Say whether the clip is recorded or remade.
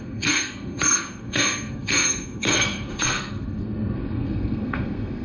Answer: remade